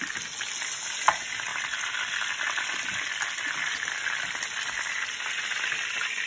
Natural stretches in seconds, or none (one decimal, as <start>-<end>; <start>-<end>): 0.0-6.3